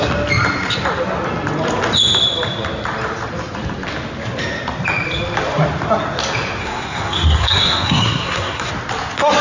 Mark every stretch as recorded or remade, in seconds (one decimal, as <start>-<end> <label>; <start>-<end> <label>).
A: 0.0-6.6 recorded; 6.6-8.7 remade; 8.7-9.4 recorded